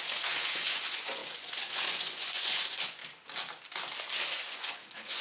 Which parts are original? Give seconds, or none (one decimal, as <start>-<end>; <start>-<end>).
3.0-4.5